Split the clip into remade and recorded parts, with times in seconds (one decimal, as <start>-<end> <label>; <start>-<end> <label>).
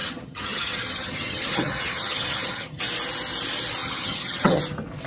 0.0-2.8 remade; 2.8-3.8 recorded; 3.8-4.6 remade; 4.6-5.1 recorded